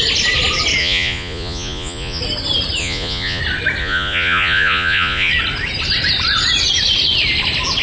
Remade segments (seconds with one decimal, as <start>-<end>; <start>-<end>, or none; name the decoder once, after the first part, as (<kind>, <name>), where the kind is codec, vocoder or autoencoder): 0.8-2.2 (vocoder, Vocos); 2.8-3.4; 3.8-5.3